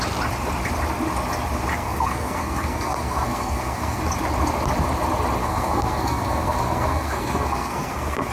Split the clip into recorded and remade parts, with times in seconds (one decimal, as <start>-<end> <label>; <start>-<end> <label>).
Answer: 0.0-1.7 recorded; 1.7-4.0 remade; 4.0-5.4 recorded; 5.4-8.3 remade

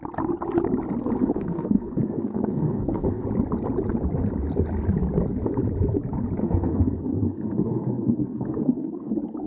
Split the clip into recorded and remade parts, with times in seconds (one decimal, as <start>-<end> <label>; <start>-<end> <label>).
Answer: 0.0-1.2 recorded; 1.2-3.2 remade; 3.2-6.4 recorded; 6.4-9.1 remade; 9.1-9.5 recorded

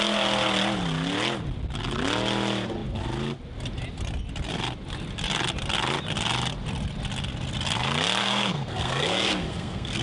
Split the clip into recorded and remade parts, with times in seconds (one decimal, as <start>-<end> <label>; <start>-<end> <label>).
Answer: 0.0-8.2 recorded; 8.2-10.0 remade

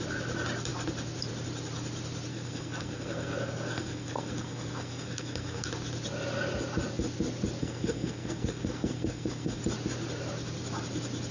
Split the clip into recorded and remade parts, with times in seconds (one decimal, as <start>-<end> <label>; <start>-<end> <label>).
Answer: 0.0-2.3 recorded; 2.3-5.7 remade; 5.7-7.6 recorded; 7.6-9.6 remade; 9.6-11.3 recorded

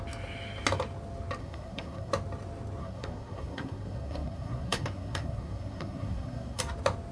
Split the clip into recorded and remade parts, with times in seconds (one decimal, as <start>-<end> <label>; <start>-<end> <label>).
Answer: 0.0-1.4 recorded; 1.4-2.1 remade; 2.1-2.8 recorded; 2.8-6.6 remade; 6.6-7.1 recorded

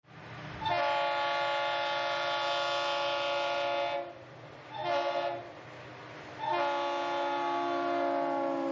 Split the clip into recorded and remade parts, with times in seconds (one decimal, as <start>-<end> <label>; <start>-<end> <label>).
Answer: 0.0-8.7 recorded

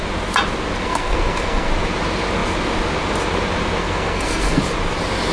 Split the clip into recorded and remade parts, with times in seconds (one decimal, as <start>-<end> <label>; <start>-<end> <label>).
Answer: 0.0-0.8 recorded; 0.8-1.7 remade; 1.7-3.8 recorded; 3.8-4.6 remade; 4.6-5.3 recorded